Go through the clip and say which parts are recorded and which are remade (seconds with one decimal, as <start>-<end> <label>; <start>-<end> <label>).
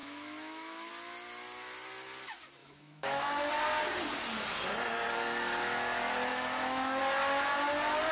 0.0-0.9 remade; 0.9-2.6 recorded; 2.6-3.5 remade; 3.5-6.3 recorded; 6.3-7.0 remade; 7.0-8.1 recorded